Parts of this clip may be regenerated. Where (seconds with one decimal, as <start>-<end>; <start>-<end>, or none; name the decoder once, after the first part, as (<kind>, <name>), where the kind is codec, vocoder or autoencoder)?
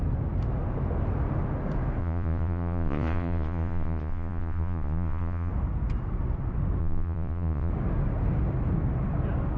2.0-5.5 (vocoder, Vocos); 6.8-7.7